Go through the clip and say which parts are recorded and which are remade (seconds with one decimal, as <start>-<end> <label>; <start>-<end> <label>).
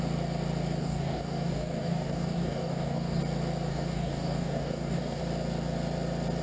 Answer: 0.0-0.8 recorded; 0.8-3.2 remade; 3.2-3.7 recorded; 3.7-5.2 remade; 5.2-6.4 recorded